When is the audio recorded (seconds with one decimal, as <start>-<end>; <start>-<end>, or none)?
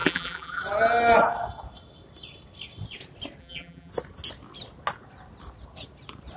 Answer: 0.6-3.4; 3.9-6.4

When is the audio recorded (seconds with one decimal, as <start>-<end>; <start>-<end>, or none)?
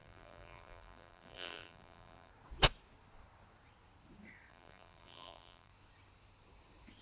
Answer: 2.3-4.5; 5.7-7.0